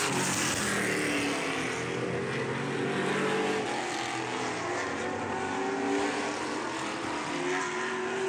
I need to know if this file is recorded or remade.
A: recorded